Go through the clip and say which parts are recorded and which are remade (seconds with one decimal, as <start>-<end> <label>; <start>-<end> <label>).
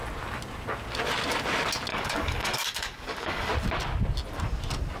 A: 0.0-1.9 recorded; 1.9-3.5 remade; 3.5-5.0 recorded